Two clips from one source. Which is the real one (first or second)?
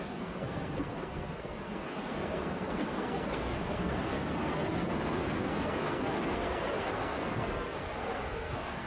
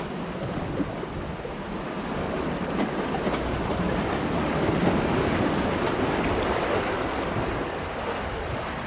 second